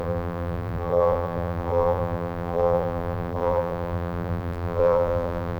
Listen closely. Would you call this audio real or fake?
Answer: fake